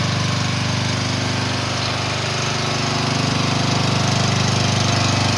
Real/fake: real